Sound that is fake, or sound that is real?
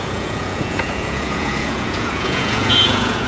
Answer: fake